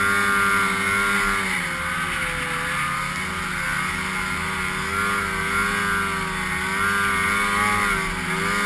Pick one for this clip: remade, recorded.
recorded